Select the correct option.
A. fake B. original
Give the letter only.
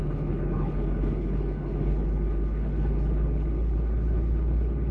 A